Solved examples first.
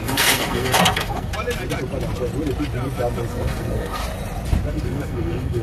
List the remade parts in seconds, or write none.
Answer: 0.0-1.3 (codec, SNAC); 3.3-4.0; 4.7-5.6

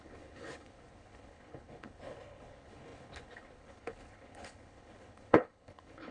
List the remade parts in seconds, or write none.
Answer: 0.0-6.1 (codec, HILCodec)

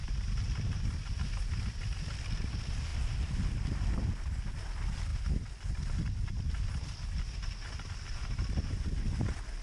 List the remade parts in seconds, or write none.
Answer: 0.0-0.6 (vocoder, BigVGAN v2)

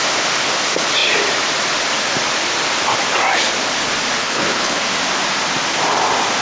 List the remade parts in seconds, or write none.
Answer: 4.2-4.8 (codec, HILCodec)